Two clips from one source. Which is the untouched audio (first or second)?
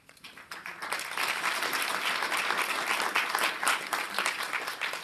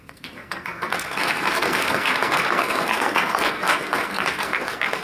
first